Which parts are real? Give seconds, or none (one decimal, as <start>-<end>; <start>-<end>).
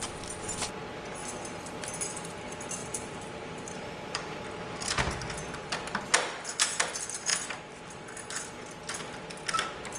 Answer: 0.0-2.8; 4.4-10.0